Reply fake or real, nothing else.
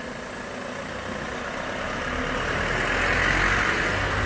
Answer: real